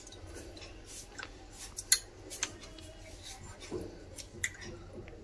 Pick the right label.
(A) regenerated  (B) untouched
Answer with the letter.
B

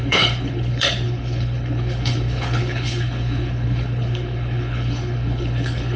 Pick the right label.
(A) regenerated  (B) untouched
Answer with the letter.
A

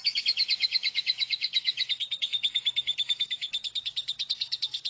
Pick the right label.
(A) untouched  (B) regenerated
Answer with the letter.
B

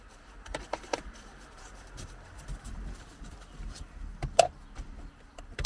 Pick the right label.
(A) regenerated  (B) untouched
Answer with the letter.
A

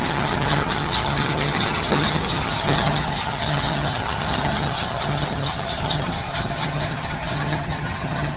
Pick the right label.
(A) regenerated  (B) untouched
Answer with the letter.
A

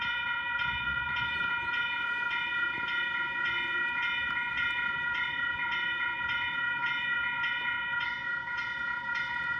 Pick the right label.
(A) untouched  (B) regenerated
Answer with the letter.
B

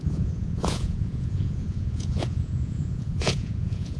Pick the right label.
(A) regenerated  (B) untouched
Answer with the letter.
A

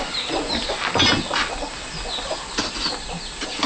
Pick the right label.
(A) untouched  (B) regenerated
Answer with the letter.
A